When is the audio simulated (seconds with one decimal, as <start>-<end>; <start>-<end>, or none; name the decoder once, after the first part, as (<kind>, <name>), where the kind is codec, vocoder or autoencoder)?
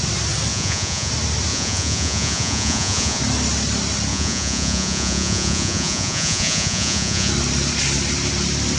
0.5-1.1 (vocoder, Vocos); 1.5-3.2; 4.1-7.3